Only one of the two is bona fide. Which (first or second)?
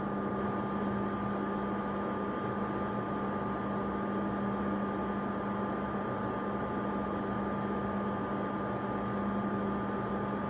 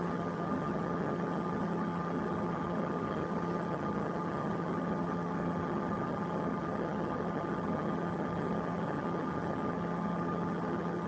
first